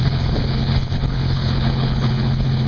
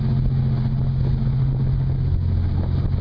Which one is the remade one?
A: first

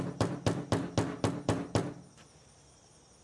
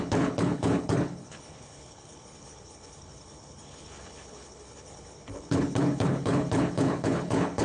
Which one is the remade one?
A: second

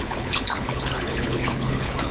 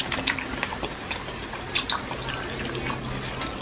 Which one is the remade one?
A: first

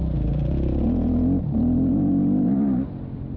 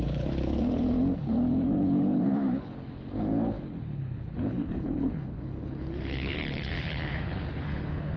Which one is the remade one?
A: second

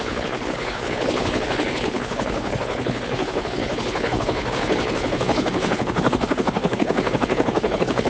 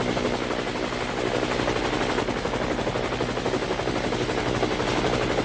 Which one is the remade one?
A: first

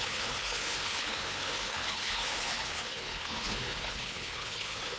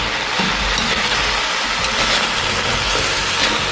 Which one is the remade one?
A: first